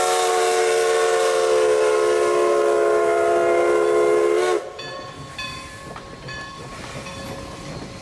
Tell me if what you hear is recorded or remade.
recorded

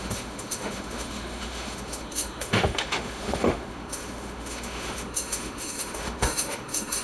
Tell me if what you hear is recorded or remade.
remade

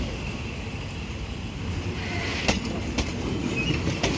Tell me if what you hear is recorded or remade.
recorded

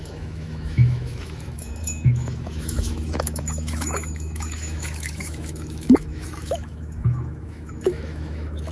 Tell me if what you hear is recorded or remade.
remade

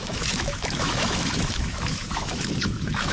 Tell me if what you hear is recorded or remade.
remade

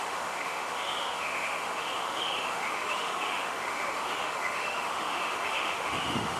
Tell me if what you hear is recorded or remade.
remade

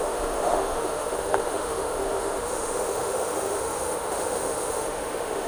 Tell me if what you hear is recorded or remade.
remade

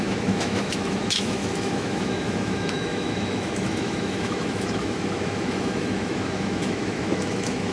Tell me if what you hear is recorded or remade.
remade